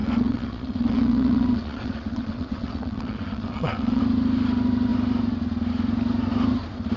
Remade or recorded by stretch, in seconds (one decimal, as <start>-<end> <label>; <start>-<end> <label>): 0.0-4.0 remade; 4.0-7.0 recorded